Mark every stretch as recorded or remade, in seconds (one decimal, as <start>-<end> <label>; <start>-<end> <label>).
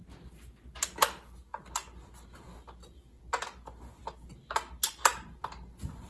0.0-6.1 recorded